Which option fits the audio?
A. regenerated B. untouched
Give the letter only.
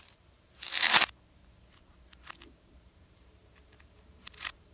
A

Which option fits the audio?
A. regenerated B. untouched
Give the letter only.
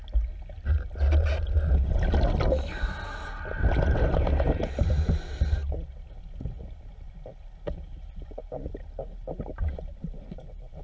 B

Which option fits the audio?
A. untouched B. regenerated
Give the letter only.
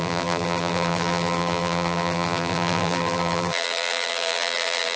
B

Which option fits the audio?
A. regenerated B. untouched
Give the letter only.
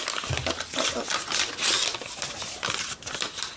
B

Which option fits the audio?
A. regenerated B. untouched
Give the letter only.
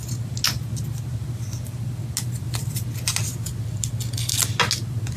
B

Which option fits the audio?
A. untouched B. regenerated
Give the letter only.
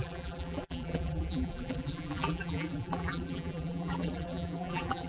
B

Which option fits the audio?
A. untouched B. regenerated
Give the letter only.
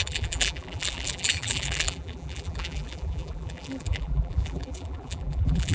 B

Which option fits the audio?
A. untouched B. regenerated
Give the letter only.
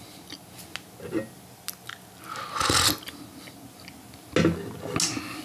A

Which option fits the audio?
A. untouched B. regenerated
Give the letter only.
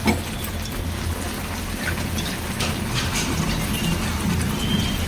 A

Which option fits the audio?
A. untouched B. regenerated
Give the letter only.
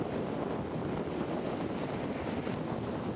A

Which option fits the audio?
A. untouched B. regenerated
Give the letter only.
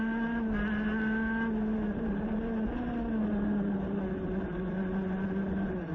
A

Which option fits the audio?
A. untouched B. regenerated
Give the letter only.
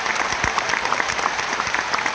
B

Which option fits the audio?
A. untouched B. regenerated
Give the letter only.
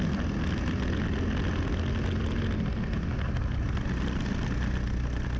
A